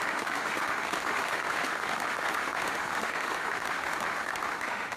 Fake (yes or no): yes